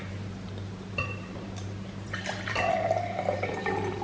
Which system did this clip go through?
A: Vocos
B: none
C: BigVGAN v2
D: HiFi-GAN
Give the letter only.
C